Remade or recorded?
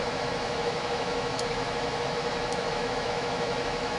remade